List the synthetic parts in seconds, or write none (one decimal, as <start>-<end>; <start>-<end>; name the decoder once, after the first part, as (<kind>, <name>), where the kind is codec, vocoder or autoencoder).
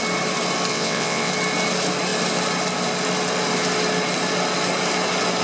0.7-1.3 (vocoder, WaveNeXt)